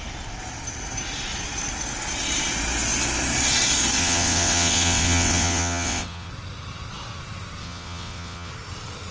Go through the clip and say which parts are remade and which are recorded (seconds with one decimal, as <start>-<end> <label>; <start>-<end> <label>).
0.0-4.0 recorded; 4.0-6.3 remade; 6.3-7.6 recorded; 7.6-8.5 remade; 8.5-9.1 recorded